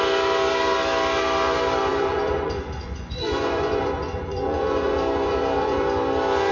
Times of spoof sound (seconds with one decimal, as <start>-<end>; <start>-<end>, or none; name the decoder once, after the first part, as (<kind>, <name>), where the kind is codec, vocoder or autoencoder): 1.9-5.8 (vocoder, Vocos)